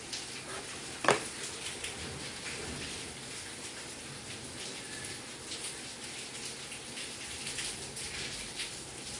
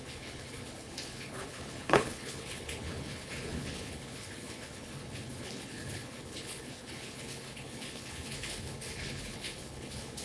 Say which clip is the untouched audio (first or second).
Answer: first